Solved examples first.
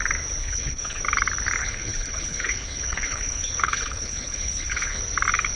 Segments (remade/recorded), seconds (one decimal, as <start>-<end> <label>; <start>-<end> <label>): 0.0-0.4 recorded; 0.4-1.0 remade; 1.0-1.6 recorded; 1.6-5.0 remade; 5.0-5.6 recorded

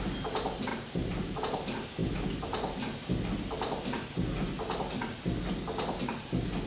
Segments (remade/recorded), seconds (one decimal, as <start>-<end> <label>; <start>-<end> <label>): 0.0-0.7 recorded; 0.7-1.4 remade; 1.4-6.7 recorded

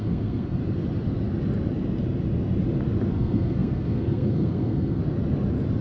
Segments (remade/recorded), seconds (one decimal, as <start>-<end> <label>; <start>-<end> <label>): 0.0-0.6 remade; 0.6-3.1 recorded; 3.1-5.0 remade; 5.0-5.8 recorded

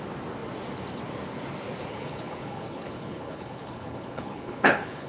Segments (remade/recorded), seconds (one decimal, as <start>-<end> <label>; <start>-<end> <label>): 0.0-1.9 recorded; 1.9-5.1 remade